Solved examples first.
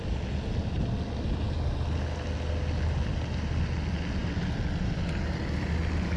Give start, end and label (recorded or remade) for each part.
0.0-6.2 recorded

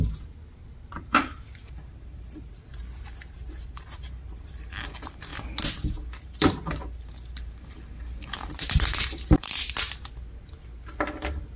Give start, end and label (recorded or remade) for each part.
0.0-5.3 remade; 5.3-6.2 recorded; 6.2-9.6 remade; 9.6-11.6 recorded

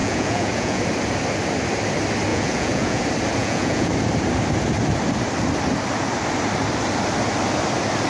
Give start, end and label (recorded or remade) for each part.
0.0-0.8 remade; 0.8-2.3 recorded; 2.3-3.0 remade; 3.0-3.4 recorded; 3.4-3.9 remade; 3.9-8.1 recorded

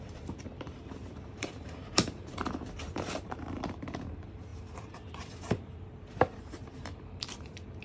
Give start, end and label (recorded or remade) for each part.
0.0-7.8 remade

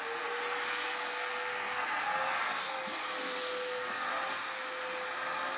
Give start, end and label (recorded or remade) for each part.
0.0-0.7 recorded; 0.7-4.1 remade; 4.1-5.6 recorded

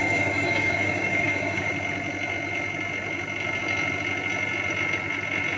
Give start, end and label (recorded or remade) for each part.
0.0-1.7 remade; 1.7-5.6 recorded

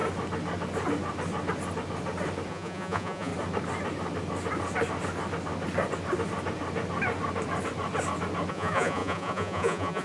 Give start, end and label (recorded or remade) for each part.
0.0-2.5 recorded; 2.5-3.3 remade; 3.3-8.5 recorded; 8.5-10.0 remade

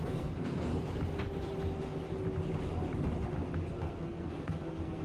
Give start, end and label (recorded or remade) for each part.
0.0-0.7 remade; 0.7-3.7 recorded; 3.7-5.0 remade